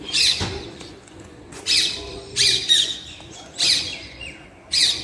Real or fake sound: fake